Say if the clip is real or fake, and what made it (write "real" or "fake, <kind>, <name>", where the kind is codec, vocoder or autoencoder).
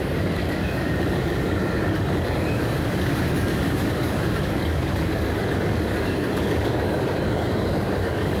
fake, codec, DAC